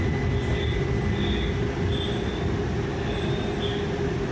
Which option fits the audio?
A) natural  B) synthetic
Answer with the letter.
A